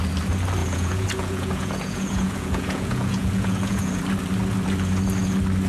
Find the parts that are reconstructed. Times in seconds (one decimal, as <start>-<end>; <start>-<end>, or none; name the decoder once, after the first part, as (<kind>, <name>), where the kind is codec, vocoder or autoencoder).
0.6-4.0 (vocoder, Vocos)